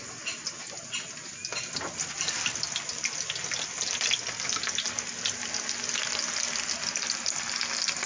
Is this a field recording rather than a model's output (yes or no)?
yes